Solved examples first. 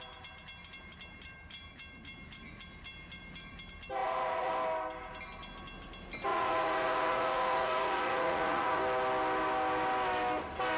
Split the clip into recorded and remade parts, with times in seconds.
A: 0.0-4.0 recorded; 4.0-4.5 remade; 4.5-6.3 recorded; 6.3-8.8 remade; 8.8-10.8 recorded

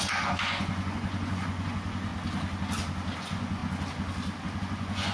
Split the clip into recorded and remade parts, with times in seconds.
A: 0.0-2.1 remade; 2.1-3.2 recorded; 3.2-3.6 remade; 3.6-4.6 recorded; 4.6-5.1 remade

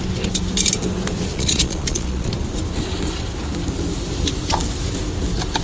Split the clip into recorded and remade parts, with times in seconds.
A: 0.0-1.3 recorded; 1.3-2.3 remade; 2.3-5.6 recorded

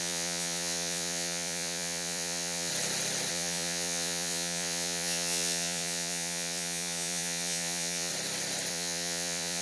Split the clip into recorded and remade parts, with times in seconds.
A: 0.0-2.7 remade; 2.7-3.3 recorded; 3.3-8.1 remade; 8.1-8.7 recorded; 8.7-9.6 remade

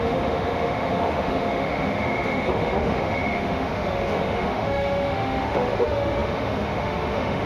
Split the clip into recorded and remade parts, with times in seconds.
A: 0.0-7.5 remade

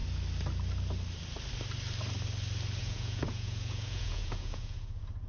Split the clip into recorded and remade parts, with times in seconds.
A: 0.0-2.8 recorded; 2.8-5.3 remade

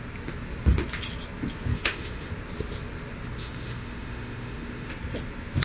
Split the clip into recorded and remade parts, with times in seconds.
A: 0.0-1.7 recorded; 1.7-2.3 remade; 2.3-3.4 recorded; 3.4-4.9 remade; 4.9-5.6 recorded

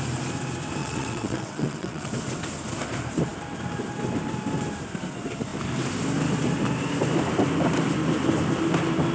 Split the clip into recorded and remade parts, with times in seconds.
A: 0.0-0.8 recorded; 0.8-2.1 remade; 2.1-9.1 recorded